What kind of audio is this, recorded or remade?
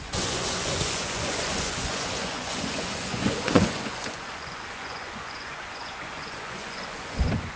remade